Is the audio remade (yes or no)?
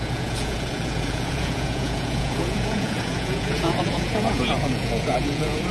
yes